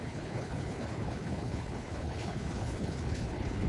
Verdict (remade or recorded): remade